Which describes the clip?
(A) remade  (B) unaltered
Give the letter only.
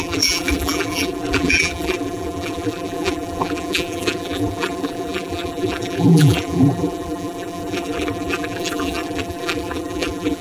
A